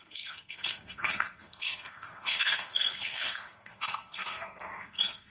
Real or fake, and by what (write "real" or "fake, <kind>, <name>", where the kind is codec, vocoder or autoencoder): fake, codec, SNAC